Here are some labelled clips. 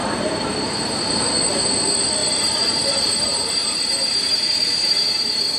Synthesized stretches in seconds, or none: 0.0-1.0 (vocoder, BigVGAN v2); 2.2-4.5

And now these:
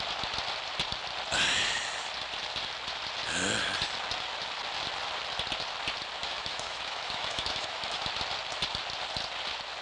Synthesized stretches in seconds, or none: 6.2-8.0 (autoencoder, DAC-VAE)

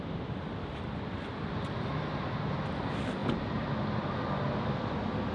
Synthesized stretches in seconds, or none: none

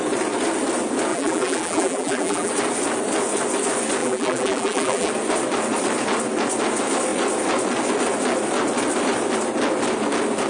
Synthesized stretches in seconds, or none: 1.1-2.5 (vocoder, BigVGAN v2); 4.0-5.1